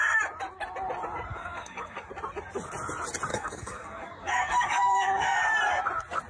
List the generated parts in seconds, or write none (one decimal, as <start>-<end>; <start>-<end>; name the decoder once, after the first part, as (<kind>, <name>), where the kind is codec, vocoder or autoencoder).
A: 1.3-2.1 (codec, DAC); 3.3-5.4